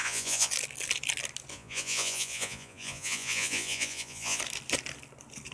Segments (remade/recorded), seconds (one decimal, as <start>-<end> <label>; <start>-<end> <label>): 0.0-0.5 remade; 0.5-1.5 recorded; 1.5-4.4 remade; 4.4-5.5 recorded